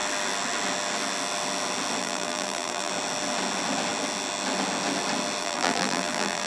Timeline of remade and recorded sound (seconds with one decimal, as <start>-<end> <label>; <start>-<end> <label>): 0.0-2.0 recorded; 2.0-2.9 remade; 2.9-5.4 recorded; 5.4-6.5 remade